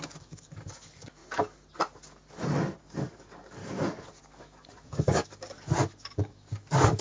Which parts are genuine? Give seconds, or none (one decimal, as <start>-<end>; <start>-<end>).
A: 1.2-2.8; 3.6-4.2